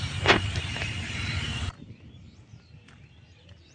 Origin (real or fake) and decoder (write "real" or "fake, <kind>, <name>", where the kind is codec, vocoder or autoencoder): real